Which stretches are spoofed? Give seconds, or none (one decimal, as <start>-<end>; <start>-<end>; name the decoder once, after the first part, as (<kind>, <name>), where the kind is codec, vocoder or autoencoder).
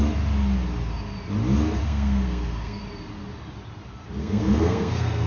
1.8-2.8 (codec, SNAC); 4.2-5.3